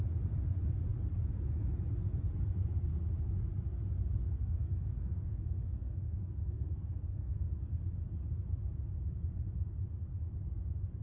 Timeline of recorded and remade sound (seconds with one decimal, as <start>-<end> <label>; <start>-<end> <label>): 0.0-4.3 recorded; 4.3-7.8 remade; 7.8-11.0 recorded